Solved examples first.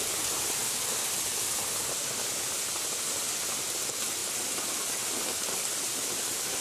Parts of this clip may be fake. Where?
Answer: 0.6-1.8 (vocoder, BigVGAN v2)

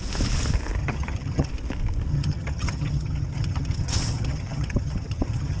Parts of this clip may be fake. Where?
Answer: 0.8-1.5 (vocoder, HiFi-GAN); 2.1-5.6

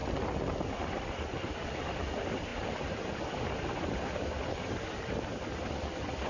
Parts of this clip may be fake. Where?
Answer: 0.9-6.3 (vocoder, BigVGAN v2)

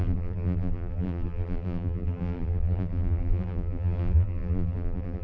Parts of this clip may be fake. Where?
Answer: 0.0-5.2 (vocoder, BigVGAN v2)